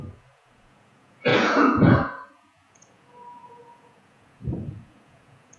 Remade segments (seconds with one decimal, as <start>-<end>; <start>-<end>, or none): 0.0-5.6